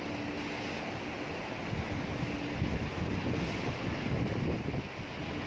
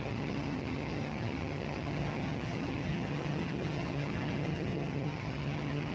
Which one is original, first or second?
first